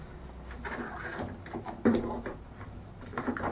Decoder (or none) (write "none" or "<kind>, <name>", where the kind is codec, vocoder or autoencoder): none